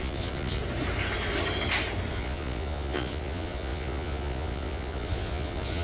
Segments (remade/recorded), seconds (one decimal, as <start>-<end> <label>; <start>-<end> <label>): 0.0-0.6 remade; 0.6-2.1 recorded; 2.1-5.8 remade

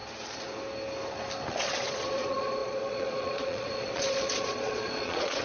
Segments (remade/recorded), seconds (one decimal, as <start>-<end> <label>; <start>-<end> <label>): 0.0-1.5 recorded; 1.5-5.4 remade

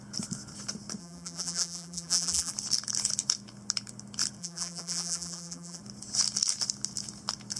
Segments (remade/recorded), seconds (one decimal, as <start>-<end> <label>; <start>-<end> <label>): 0.0-1.0 recorded; 1.0-2.5 remade; 2.5-4.4 recorded; 4.4-5.8 remade; 5.8-7.6 recorded

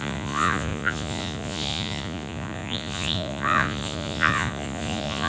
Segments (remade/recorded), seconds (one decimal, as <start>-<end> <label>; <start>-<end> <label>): 0.0-5.3 remade

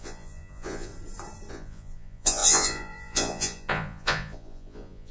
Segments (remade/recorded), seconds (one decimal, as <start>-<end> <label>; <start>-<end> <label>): 0.0-0.9 remade; 0.9-1.5 recorded; 1.5-5.1 remade

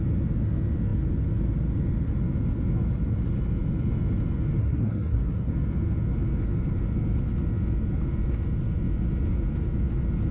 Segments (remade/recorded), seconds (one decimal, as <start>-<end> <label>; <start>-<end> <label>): 0.0-4.6 recorded; 4.6-5.5 remade; 5.5-10.3 recorded